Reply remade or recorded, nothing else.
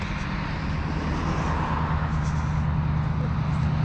recorded